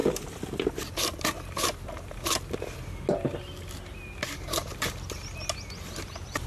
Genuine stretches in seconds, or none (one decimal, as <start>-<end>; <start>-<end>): 2.5-6.5